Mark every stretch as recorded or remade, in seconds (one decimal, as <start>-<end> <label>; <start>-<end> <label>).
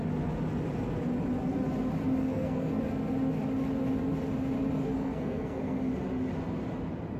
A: 0.0-2.2 recorded; 2.2-2.8 remade; 2.8-4.8 recorded; 4.8-5.9 remade; 5.9-7.2 recorded